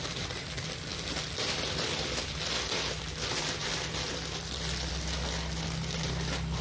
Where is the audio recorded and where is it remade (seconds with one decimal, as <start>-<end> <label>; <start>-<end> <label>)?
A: 0.0-6.6 recorded